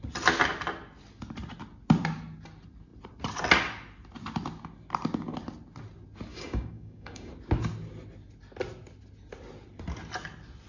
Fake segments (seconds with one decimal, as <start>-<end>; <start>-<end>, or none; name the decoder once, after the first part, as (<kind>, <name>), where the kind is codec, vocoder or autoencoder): 6.3-7.3 (codec, DAC)